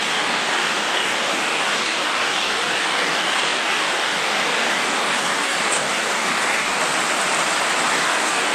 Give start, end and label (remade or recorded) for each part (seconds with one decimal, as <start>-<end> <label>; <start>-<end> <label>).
0.0-6.8 remade; 6.8-7.9 recorded; 7.9-8.5 remade